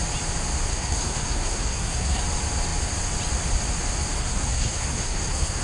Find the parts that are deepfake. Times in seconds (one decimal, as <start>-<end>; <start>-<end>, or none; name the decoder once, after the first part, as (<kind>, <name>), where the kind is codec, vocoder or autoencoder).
0.7-2.2 (codec, SNAC); 4.2-5.6